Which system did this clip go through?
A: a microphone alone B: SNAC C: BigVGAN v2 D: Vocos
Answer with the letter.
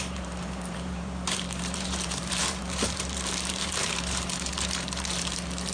C